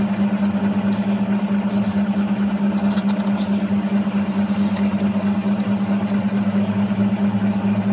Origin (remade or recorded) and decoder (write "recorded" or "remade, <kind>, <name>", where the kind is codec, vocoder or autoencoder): recorded